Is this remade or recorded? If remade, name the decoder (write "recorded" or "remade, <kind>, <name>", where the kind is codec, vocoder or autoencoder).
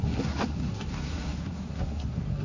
remade, codec, SNAC